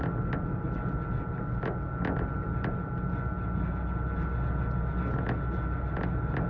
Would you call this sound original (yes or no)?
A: yes